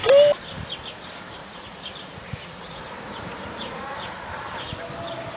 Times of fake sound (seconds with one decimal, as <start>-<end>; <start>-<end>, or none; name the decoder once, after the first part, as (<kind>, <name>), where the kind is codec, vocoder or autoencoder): 1.4-4.3 (vocoder, Vocos)